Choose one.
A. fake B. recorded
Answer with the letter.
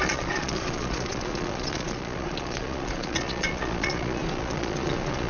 A